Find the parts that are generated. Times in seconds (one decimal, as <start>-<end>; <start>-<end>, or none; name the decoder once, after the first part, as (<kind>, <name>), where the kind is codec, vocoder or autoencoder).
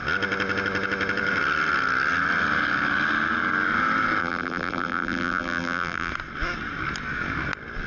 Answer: 4.2-6.1 (vocoder, BigVGAN v2)